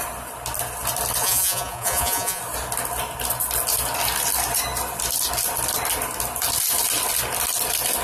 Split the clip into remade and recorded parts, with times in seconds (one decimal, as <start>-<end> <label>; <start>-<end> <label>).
0.0-1.2 recorded; 1.2-2.4 remade; 2.4-8.0 recorded